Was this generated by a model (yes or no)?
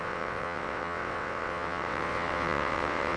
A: yes